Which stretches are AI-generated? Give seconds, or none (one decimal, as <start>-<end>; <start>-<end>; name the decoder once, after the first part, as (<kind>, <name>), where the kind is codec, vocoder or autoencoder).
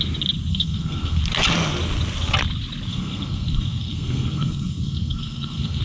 0.5-1.2 (codec, SNAC); 2.9-5.8